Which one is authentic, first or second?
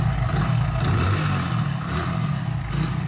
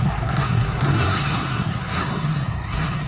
first